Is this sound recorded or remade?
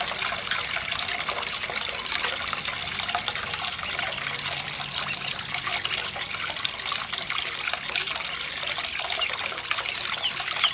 recorded